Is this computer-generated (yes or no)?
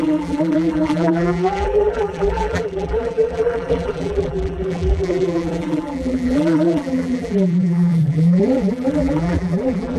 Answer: yes